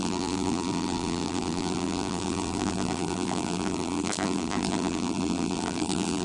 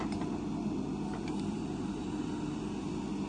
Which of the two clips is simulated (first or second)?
first